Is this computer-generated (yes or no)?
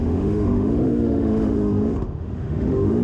yes